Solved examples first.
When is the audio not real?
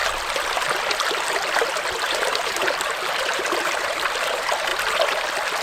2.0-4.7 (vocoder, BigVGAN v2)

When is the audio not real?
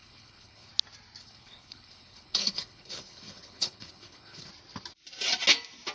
0.0-0.7 (codec, HILCodec); 1.2-4.5